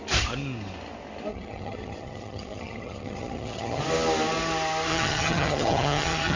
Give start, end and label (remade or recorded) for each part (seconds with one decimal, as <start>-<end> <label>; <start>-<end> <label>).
0.0-1.3 recorded; 1.3-3.8 remade; 3.8-4.9 recorded; 4.9-6.4 remade

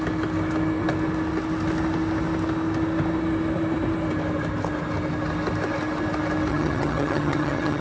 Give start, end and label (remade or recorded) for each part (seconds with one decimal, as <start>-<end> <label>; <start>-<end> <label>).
0.0-6.5 recorded; 6.5-7.8 remade

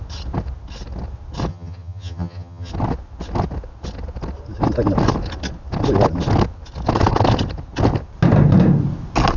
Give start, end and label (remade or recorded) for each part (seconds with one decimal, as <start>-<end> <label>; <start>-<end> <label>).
0.0-1.5 recorded; 1.5-2.7 remade; 2.7-9.4 recorded

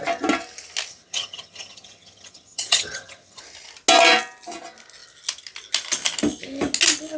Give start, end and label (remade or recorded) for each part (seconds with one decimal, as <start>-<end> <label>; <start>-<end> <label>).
0.0-0.9 recorded; 0.9-3.4 remade; 3.4-7.2 recorded

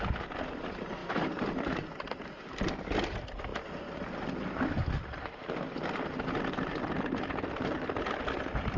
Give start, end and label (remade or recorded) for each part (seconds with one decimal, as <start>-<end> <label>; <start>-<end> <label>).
0.0-8.8 recorded

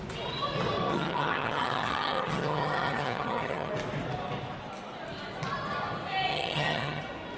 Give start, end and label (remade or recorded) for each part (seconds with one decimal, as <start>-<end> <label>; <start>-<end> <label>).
0.0-0.9 recorded; 0.9-3.7 remade; 3.7-6.3 recorded; 6.3-7.0 remade; 7.0-7.4 recorded

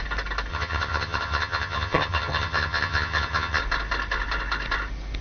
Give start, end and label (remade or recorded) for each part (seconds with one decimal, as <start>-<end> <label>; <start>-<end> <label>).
0.0-0.5 recorded; 0.5-3.6 remade; 3.6-5.2 recorded